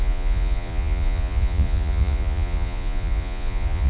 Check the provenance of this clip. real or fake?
fake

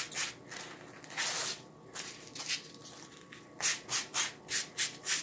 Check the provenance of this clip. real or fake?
real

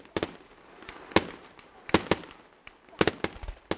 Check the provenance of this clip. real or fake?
real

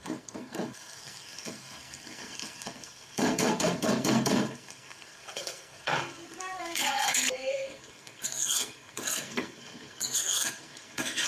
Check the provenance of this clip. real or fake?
fake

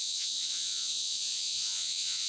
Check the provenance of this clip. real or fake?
fake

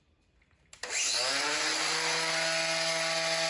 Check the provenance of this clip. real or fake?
real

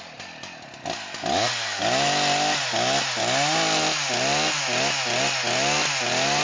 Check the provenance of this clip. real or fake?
real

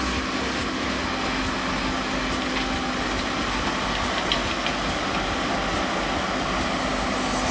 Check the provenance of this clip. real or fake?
real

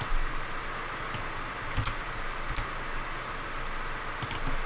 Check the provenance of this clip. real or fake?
real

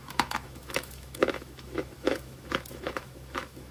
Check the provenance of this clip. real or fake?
fake